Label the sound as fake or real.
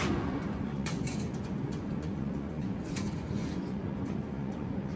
fake